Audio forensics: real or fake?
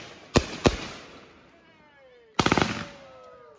real